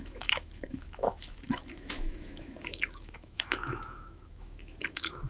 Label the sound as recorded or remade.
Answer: remade